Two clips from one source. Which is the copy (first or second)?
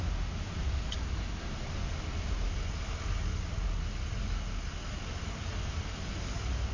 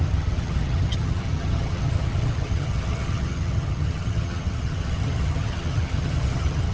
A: second